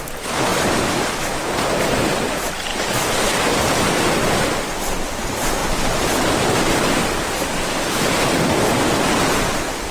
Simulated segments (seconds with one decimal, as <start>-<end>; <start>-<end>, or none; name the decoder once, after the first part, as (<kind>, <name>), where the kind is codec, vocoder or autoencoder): none